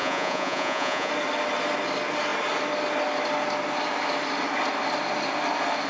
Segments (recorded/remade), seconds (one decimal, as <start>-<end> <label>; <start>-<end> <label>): 0.0-1.1 remade; 1.1-5.9 recorded